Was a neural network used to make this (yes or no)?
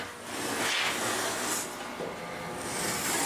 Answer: no